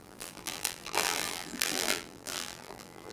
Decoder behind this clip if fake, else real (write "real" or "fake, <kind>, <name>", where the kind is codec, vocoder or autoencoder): fake, vocoder, BigVGAN v2